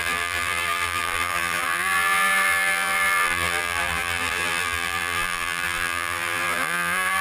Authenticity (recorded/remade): remade